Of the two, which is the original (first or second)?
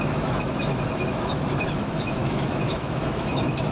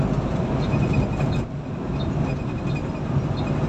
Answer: second